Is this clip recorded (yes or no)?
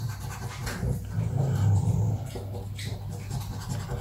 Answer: yes